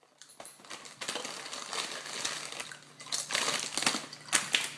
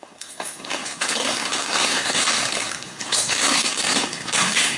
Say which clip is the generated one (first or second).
second